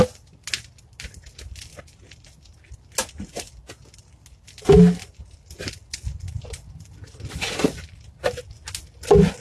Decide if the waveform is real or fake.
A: real